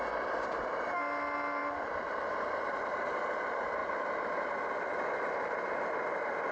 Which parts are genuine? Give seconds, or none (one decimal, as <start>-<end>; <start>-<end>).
0.0-6.5